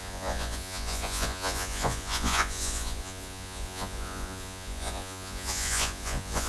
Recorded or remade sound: remade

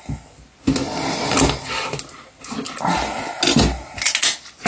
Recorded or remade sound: recorded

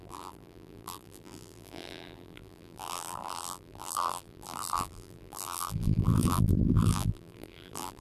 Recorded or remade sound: remade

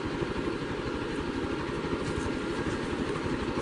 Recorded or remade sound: recorded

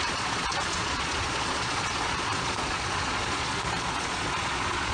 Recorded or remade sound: remade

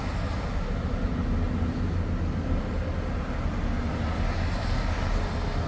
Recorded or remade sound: recorded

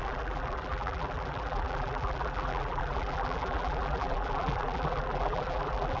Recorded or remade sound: remade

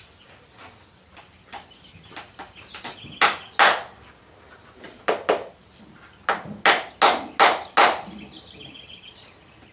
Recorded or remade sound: recorded